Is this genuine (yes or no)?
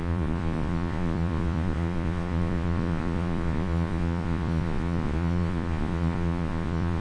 no